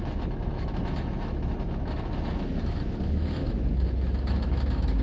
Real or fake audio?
fake